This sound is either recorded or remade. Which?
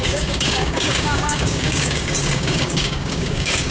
remade